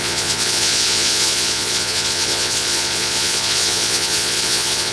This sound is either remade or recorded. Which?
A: remade